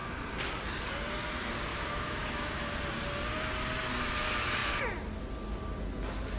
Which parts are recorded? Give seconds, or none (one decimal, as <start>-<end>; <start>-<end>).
0.0-1.7; 2.6-6.4